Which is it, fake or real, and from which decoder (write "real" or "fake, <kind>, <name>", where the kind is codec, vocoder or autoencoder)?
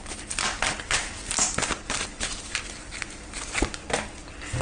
real